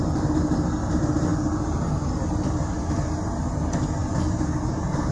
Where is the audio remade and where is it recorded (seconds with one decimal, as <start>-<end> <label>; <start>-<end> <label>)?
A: 0.0-5.1 recorded